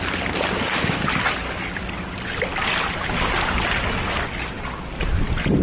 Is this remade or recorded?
recorded